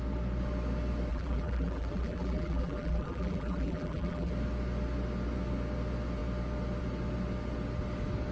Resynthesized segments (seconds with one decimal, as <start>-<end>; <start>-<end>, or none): 1.1-4.3